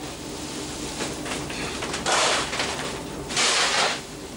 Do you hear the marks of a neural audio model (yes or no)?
yes